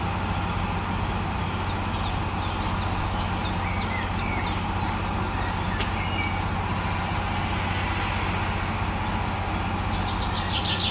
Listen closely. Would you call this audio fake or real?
real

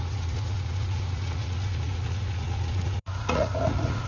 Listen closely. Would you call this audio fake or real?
fake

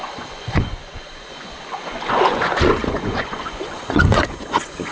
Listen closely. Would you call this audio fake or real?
fake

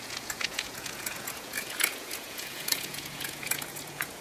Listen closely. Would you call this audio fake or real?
fake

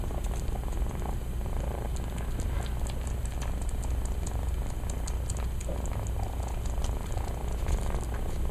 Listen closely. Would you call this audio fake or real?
real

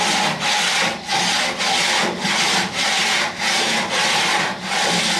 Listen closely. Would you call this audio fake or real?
real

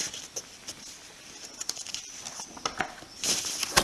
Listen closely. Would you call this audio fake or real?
real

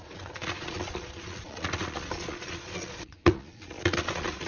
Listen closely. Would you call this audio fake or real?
fake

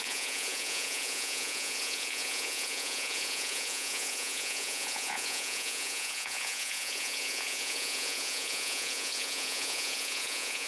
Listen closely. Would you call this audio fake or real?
fake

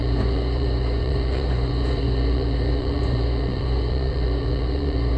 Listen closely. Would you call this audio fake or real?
fake